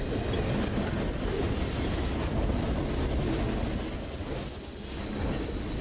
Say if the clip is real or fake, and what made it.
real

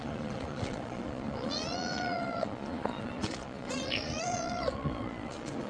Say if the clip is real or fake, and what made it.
fake, vocoder, Vocos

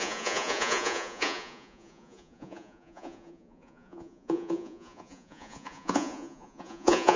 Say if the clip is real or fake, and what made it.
fake, vocoder, Vocos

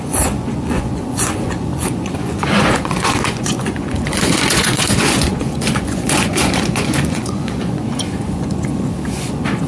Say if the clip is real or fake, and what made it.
fake, vocoder, Vocos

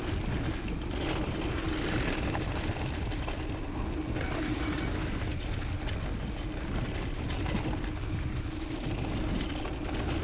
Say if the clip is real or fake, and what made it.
real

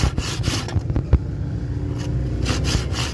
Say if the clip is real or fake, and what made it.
real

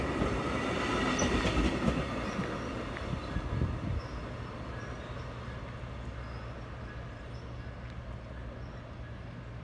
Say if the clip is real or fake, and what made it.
real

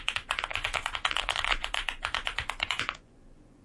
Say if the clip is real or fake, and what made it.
fake, vocoder, Vocos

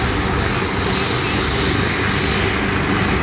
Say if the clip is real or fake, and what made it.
real